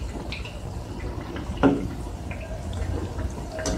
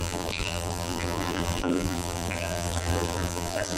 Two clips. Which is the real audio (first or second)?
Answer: first